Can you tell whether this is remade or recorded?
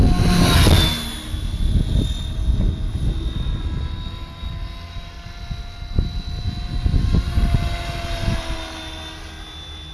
recorded